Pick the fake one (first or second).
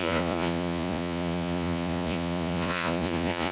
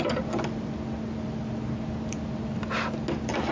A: first